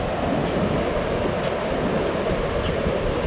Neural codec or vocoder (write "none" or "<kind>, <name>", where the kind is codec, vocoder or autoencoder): none